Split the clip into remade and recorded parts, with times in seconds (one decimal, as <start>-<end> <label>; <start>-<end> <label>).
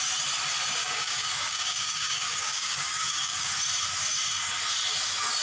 0.0-0.8 recorded; 0.8-3.5 remade; 3.5-5.4 recorded